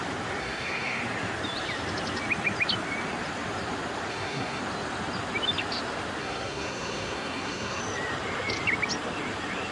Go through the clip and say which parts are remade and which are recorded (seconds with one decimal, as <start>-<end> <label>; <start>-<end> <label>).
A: 0.0-0.4 recorded; 0.4-1.0 remade; 1.0-4.1 recorded; 4.1-4.6 remade; 4.6-6.2 recorded; 6.2-7.8 remade; 7.8-9.7 recorded